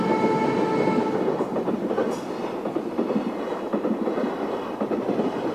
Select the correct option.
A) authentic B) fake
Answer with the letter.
A